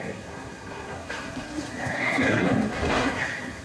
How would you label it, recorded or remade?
remade